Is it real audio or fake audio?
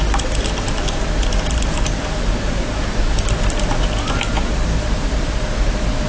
real